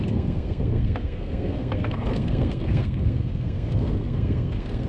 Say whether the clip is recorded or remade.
remade